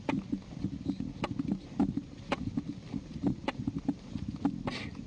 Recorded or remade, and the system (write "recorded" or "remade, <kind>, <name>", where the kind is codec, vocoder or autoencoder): recorded